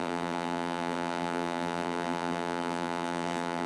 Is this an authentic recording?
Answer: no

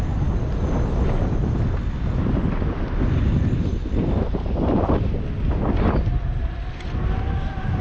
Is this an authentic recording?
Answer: yes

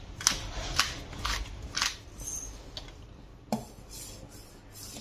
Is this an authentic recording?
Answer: yes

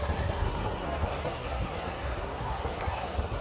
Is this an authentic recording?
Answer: no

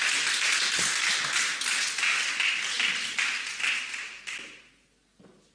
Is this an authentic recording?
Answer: yes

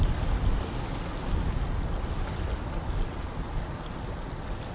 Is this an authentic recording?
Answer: yes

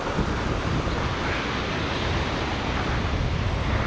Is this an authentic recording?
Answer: yes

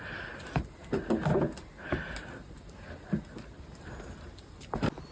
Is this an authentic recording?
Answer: yes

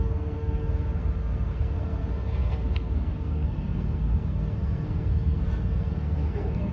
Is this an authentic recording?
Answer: no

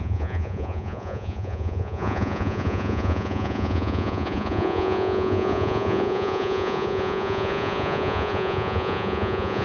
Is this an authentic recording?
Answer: no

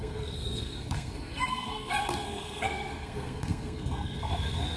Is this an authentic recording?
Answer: no